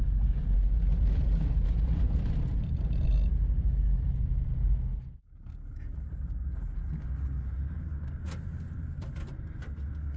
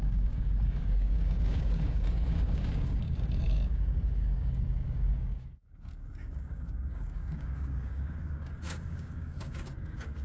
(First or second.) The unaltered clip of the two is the first